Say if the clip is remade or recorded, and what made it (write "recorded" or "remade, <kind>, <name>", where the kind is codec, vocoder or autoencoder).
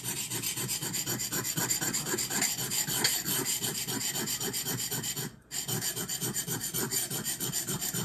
recorded